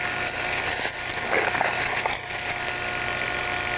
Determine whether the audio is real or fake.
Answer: real